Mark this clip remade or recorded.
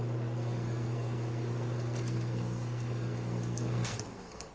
remade